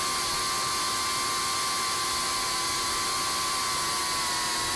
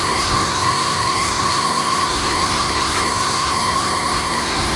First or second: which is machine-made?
second